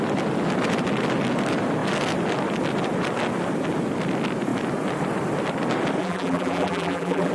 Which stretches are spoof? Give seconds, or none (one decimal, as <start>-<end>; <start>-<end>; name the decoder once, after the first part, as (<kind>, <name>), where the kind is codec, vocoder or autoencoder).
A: 6.0-7.3 (vocoder, BigVGAN v2)

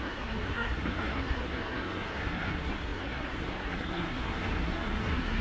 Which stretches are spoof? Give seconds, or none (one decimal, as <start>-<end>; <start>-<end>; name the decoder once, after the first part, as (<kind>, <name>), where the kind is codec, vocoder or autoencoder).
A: 0.0-5.4 (codec, SNAC)

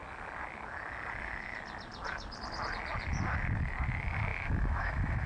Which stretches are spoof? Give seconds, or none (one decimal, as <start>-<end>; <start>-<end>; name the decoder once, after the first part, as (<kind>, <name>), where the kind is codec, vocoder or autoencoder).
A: 4.3-5.3 (autoencoder, DAC-VAE)

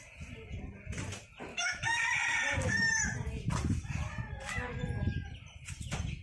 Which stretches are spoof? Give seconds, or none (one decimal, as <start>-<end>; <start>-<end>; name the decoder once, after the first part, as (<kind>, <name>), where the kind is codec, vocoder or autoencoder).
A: 1.5-2.0 (autoencoder, DAC-VAE)